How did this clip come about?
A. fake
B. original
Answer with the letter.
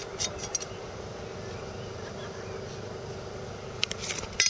B